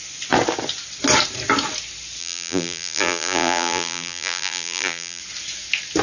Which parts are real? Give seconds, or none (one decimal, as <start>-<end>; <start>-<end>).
0.0-2.2; 5.2-6.0